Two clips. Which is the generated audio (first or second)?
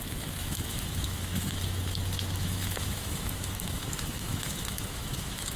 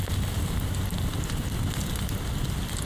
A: first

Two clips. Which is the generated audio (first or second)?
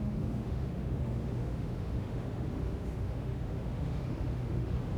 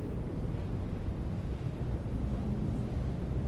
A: first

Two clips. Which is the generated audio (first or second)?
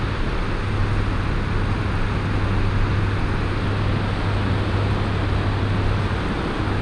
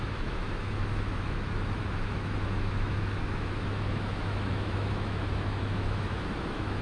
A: second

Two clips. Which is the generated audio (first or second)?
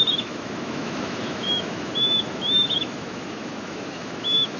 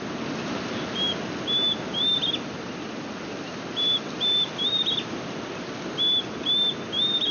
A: first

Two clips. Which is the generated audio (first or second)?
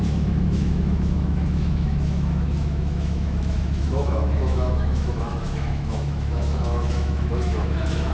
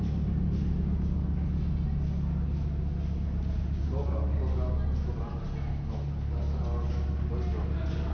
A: first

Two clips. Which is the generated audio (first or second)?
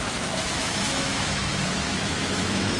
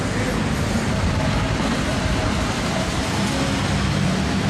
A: first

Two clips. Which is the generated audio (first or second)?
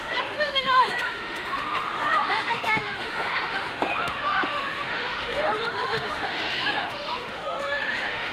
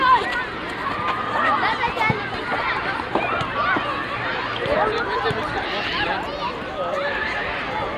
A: first